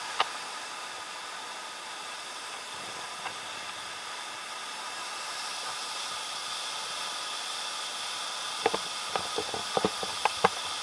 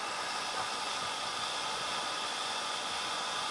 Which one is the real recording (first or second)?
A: first